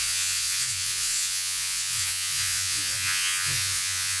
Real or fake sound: fake